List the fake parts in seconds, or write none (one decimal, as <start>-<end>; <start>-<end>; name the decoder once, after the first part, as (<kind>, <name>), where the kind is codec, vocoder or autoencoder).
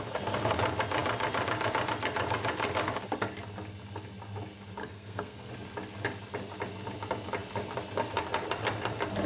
4.8-5.5 (codec, SNAC)